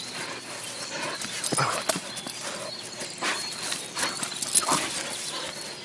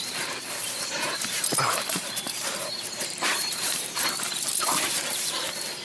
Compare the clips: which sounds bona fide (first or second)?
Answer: first